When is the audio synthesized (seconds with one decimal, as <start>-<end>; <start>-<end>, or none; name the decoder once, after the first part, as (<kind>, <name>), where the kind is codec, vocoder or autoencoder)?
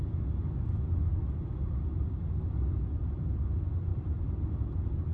3.9-4.5 (vocoder, BigVGAN v2)